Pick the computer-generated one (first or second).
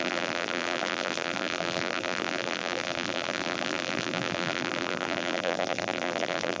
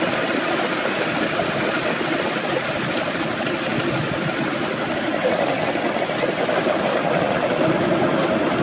first